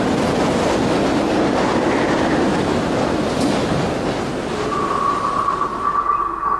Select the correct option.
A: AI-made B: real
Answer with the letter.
B